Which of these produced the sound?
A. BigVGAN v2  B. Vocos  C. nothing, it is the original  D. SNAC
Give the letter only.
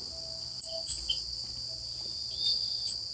C